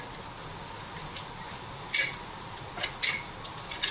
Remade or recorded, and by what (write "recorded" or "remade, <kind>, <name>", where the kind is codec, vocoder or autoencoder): recorded